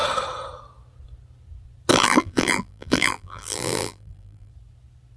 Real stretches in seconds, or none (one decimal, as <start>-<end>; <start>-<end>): 0.0-1.9; 4.5-5.2